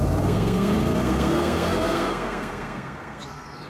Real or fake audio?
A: fake